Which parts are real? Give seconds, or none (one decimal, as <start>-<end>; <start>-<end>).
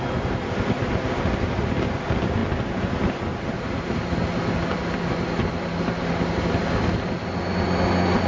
0.0-8.3